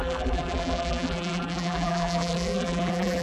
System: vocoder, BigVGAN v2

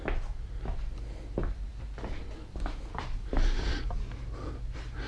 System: none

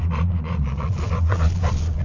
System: vocoder, Vocos